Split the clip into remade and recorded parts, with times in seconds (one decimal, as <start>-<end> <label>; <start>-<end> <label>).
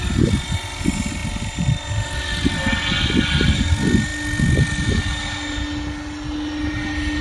0.0-7.2 recorded